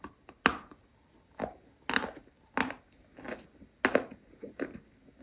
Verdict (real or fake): real